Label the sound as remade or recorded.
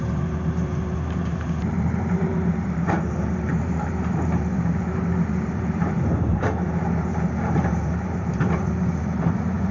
remade